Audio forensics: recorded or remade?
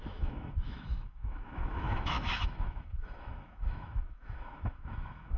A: remade